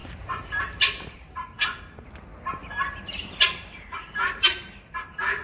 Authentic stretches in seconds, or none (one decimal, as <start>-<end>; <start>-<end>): 1.8-2.6; 4.6-5.4